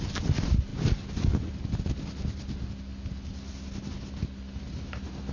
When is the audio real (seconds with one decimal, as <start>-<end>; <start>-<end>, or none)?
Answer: 0.0-5.3